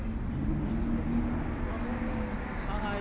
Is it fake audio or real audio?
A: real